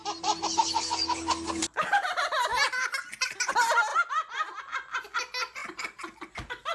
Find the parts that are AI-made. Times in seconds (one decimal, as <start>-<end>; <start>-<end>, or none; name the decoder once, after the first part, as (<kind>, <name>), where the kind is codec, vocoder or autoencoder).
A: none